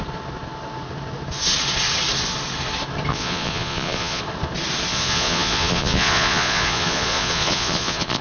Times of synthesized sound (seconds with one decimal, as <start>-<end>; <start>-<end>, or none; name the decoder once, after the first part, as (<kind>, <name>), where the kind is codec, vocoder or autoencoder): 3.1-4.2 (vocoder, Vocos); 4.9-8.2